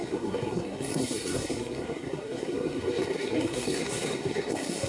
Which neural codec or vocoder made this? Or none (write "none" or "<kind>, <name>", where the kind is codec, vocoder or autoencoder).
codec, SNAC